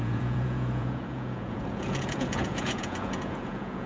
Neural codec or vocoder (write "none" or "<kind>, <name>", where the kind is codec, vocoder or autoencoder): vocoder, Vocos